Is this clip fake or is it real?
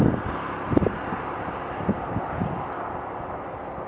real